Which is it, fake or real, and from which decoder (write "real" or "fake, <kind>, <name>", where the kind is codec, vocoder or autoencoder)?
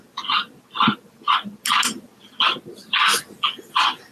real